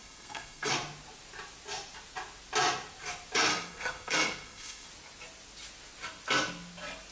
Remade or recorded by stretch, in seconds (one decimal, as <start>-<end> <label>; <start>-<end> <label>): 0.0-0.7 remade; 0.7-3.5 recorded; 3.5-4.9 remade; 4.9-7.1 recorded